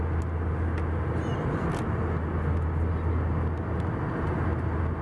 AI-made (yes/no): no